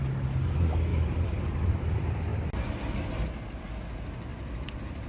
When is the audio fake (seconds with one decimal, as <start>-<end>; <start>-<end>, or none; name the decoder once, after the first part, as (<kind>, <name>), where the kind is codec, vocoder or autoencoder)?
0.9-1.8 (vocoder, BigVGAN v2)